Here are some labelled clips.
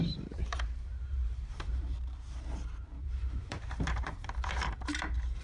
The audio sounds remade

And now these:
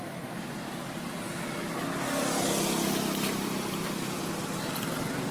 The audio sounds recorded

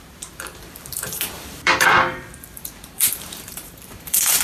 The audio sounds remade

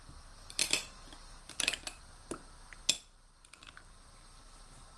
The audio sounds recorded